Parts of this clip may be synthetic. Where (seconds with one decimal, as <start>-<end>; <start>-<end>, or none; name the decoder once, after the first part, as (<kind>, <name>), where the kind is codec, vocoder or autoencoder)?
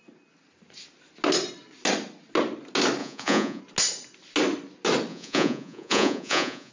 3.0-3.6 (vocoder, Vocos); 5.1-6.7